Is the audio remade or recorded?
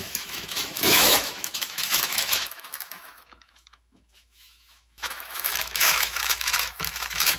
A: remade